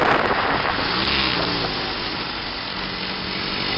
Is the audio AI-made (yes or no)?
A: no